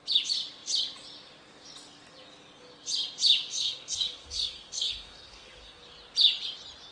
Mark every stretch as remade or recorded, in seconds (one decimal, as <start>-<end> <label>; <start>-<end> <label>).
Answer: 0.0-3.5 recorded; 3.5-5.8 remade; 5.8-6.9 recorded

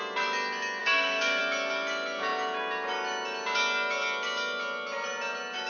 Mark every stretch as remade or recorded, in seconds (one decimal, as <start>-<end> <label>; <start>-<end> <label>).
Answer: 0.0-0.8 recorded; 0.8-1.4 remade; 1.4-5.7 recorded

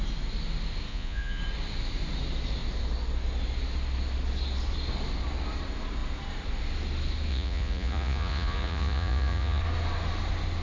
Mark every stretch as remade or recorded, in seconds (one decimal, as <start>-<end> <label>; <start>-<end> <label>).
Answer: 0.0-0.9 recorded; 0.9-1.4 remade; 1.4-7.3 recorded; 7.3-9.6 remade; 9.6-10.6 recorded